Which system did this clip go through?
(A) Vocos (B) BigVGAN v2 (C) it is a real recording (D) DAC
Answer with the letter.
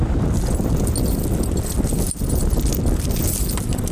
C